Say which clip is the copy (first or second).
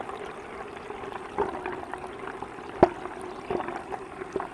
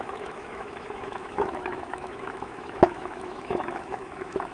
second